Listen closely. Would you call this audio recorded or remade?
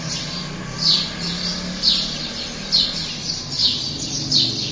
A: recorded